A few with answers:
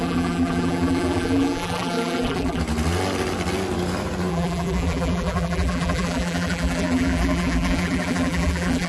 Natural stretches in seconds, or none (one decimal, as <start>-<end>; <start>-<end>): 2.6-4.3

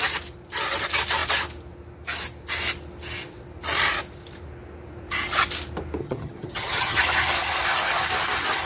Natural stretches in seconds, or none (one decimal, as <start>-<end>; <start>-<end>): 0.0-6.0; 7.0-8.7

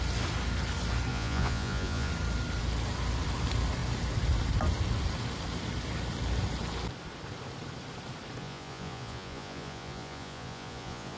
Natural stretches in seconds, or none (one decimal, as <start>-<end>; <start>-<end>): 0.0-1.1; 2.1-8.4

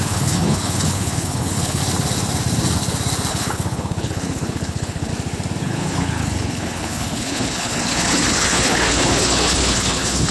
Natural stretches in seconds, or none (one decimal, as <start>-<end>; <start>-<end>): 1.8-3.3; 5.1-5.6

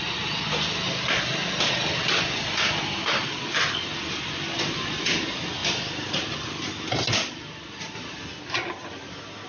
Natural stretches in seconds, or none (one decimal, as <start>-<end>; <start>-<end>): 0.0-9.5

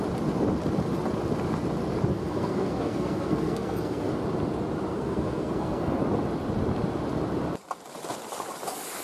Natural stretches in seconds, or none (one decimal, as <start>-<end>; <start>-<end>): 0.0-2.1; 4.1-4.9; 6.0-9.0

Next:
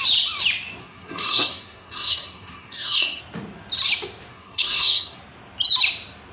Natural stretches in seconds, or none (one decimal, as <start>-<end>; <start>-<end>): 0.0-0.8; 3.2-4.3; 5.2-6.3